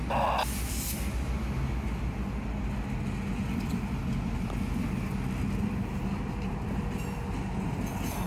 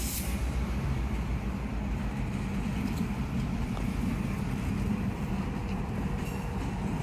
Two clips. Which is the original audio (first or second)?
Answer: first